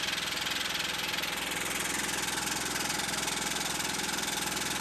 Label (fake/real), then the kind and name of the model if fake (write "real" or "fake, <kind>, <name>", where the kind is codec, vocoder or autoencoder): real